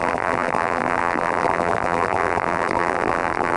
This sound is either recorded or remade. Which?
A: remade